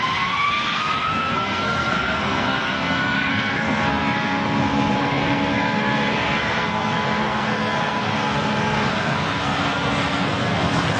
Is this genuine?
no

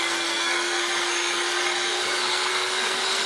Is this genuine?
no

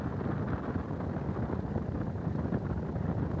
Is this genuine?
yes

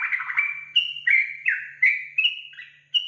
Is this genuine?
yes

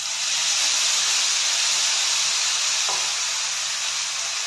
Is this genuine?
yes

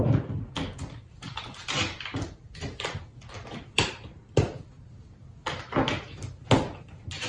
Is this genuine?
yes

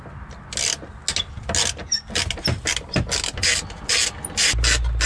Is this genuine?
yes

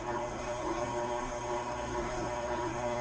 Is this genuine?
no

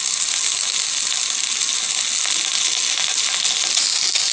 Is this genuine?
yes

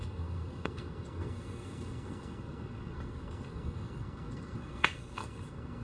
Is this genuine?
no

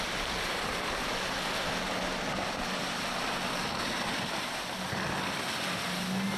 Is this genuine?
yes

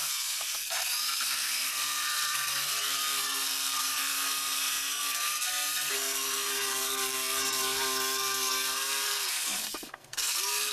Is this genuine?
no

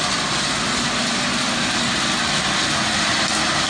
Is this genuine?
yes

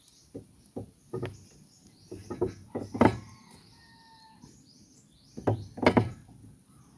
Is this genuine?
yes